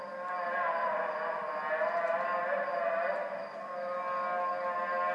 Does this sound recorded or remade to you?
recorded